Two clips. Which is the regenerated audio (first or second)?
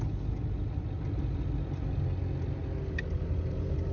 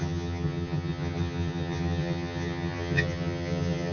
second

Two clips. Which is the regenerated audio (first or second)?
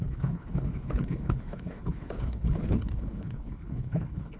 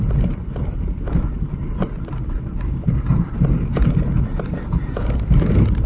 first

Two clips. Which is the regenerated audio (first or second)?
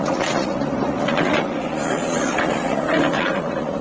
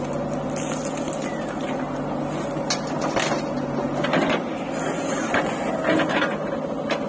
first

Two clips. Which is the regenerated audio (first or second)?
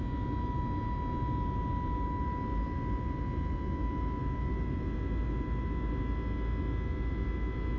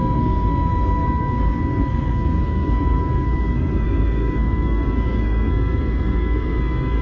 second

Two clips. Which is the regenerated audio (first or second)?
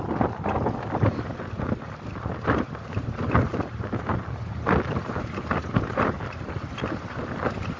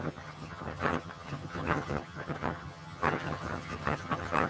second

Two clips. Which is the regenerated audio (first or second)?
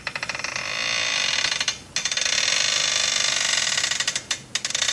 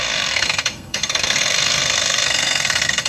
second